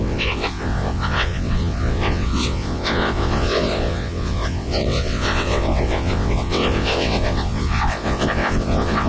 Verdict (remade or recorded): remade